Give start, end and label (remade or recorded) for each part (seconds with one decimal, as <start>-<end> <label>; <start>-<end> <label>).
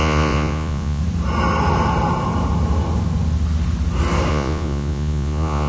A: 0.0-1.0 remade; 1.0-4.3 recorded; 4.3-5.7 remade